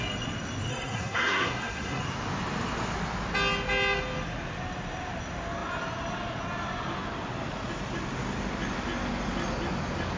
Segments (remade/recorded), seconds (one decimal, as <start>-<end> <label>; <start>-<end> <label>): 0.0-0.7 recorded; 0.7-2.0 remade; 2.0-10.2 recorded